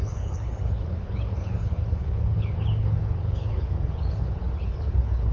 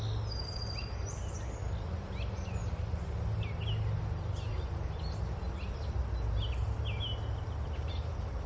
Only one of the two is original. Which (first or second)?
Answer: second